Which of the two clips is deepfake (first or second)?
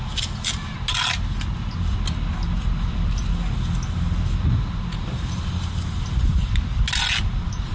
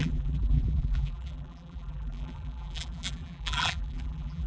second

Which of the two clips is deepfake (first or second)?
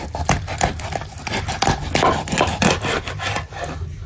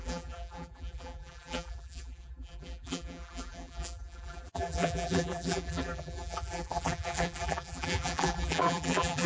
second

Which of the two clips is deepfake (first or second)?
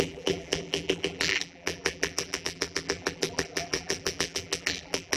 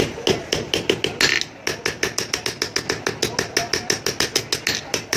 first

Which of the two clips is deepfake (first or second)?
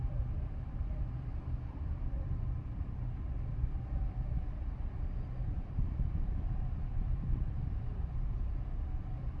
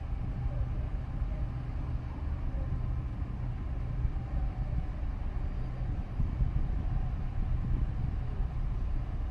first